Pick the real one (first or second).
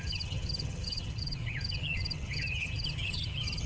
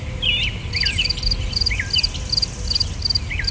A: second